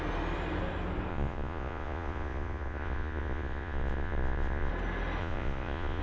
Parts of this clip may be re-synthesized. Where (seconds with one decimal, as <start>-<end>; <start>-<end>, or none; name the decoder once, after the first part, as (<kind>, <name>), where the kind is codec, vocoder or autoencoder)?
1.1-4.7 (vocoder, Vocos); 5.2-6.0